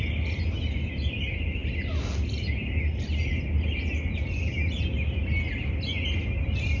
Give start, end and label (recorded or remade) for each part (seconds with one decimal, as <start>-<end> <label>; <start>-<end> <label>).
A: 0.0-6.8 recorded